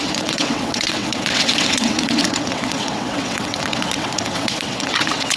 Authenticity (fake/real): fake